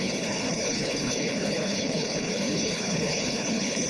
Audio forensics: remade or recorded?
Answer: remade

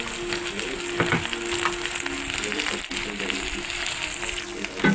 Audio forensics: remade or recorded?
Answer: recorded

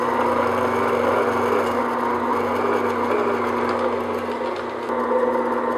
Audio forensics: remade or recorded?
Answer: recorded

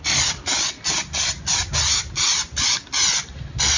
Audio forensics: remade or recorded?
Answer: recorded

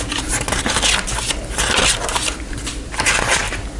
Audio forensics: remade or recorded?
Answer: recorded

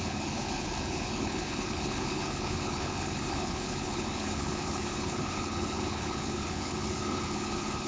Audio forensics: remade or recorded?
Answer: remade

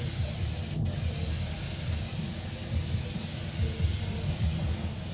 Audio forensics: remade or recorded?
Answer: recorded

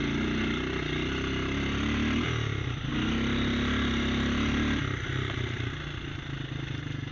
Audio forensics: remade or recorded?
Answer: recorded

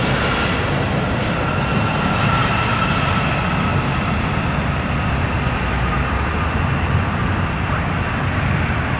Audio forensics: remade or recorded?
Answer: recorded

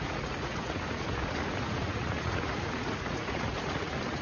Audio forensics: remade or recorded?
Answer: remade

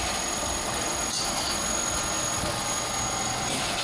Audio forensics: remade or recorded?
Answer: recorded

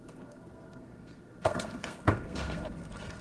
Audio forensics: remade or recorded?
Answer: remade